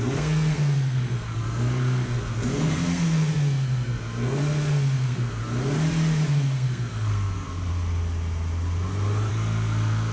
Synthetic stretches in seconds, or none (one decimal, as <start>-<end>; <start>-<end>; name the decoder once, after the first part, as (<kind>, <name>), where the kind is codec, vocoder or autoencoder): 0.0-5.4 (codec, SNAC); 6.3-7.7; 9.3-10.1